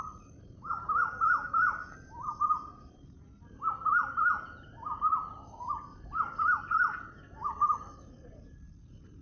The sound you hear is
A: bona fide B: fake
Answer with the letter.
A